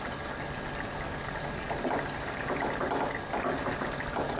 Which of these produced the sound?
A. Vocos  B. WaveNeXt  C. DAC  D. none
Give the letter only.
D